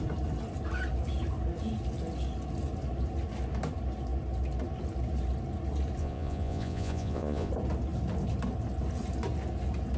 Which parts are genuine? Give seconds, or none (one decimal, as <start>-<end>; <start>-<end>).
0.0-6.0; 7.5-10.0